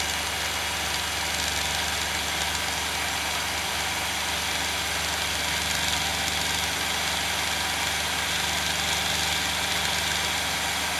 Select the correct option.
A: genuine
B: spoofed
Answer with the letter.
A